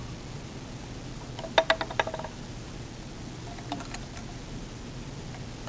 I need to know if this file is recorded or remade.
recorded